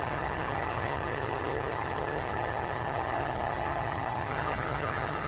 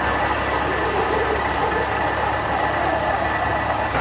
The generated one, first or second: first